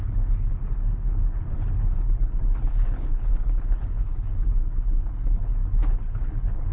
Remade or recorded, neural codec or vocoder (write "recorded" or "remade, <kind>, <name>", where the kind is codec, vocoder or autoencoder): remade, codec, HILCodec